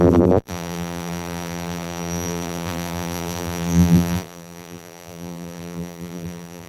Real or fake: fake